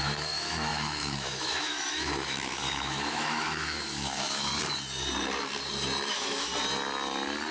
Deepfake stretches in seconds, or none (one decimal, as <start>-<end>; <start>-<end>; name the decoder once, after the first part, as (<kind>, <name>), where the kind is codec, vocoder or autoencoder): 0.0-4.5 (autoencoder, DAC-VAE); 6.1-6.5